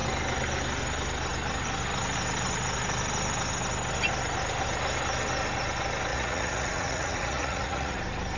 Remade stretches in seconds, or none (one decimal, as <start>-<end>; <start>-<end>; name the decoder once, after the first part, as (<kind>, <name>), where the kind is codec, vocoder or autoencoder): 6.1-8.0 (vocoder, Vocos)

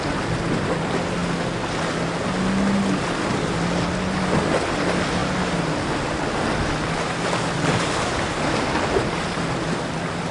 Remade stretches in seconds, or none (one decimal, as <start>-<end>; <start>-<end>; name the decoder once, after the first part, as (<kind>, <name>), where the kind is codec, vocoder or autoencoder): none

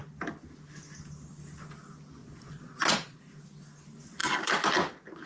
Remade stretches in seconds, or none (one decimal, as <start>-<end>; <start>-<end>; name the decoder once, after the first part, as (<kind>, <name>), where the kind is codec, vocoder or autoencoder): 2.2-3.2 (vocoder, Vocos)

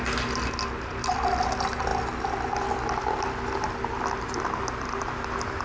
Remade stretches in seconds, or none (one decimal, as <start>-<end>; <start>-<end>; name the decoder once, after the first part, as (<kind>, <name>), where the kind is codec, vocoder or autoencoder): none

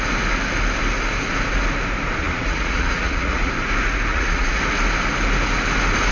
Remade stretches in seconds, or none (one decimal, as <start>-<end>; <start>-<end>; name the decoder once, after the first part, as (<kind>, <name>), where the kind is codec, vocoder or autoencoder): 2.2-3.5 (vocoder, Vocos); 4.1-4.6

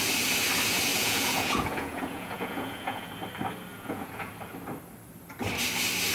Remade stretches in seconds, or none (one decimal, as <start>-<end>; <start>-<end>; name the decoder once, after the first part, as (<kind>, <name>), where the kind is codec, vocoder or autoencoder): 0.9-3.1 (vocoder, Vocos); 3.7-4.3

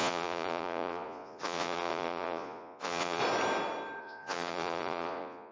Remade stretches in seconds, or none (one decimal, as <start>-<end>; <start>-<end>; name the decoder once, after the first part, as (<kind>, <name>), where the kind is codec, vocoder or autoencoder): 0.0-3.2 (vocoder, Vocos); 4.0-5.5